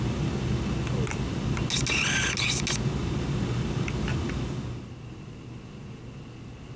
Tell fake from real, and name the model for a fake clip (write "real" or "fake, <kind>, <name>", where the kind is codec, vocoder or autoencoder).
real